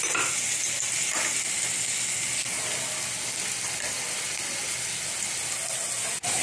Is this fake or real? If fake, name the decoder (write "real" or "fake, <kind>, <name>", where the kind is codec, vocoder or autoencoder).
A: real